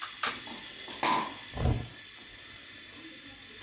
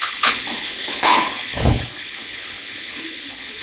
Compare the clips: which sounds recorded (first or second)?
first